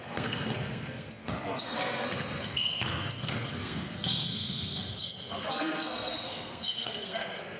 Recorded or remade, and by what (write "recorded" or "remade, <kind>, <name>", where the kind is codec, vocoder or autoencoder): remade, codec, SNAC